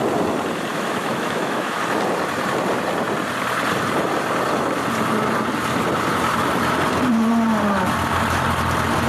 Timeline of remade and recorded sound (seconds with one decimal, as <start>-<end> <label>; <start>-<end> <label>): 0.0-0.7 recorded; 0.7-1.8 remade; 1.8-9.1 recorded